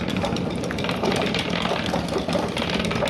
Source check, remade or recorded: recorded